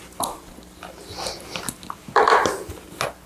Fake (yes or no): no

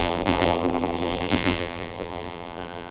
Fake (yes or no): yes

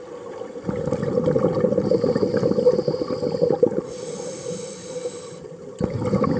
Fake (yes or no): no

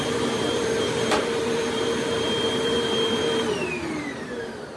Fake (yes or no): yes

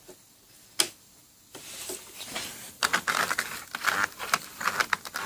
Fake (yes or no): no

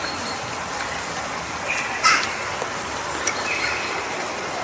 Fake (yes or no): no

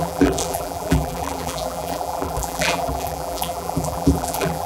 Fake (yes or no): yes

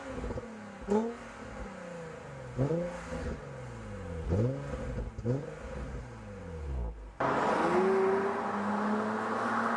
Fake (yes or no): no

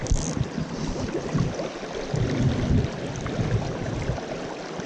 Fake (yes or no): no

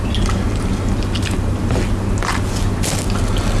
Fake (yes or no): no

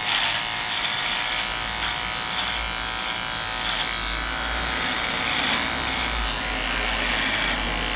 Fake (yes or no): no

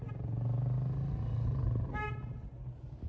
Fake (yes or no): no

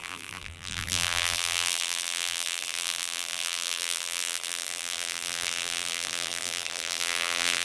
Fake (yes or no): yes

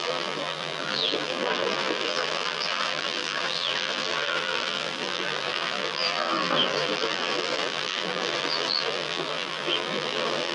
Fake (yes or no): yes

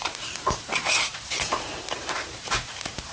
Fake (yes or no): yes